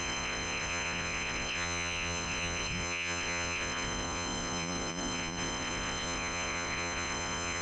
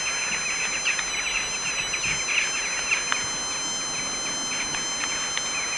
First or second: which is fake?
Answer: first